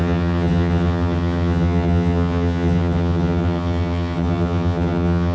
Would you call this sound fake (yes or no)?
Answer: yes